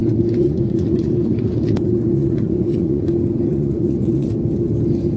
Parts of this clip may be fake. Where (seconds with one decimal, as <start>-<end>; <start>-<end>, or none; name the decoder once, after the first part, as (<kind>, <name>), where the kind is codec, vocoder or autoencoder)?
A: 0.0-3.1 (vocoder, Vocos); 3.5-4.3